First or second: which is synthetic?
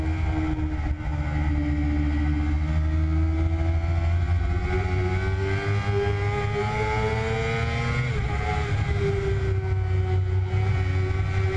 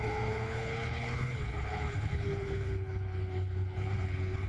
second